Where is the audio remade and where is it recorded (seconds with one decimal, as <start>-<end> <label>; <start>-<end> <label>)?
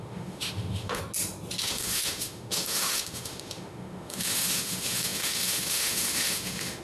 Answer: 0.0-1.0 remade; 1.0-1.6 recorded; 1.6-6.8 remade